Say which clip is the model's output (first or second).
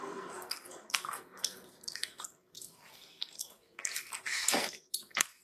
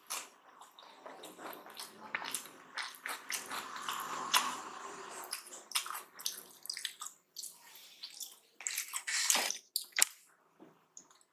first